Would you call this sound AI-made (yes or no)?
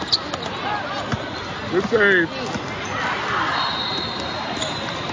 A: no